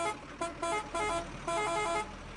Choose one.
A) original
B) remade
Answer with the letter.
A